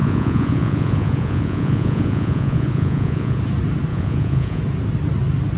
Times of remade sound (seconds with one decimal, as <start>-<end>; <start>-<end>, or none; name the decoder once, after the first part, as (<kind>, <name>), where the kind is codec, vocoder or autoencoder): 0.0-3.4 (vocoder, Vocos); 3.9-4.6